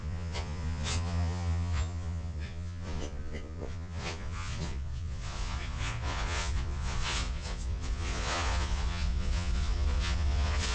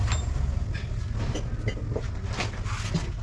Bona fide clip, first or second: second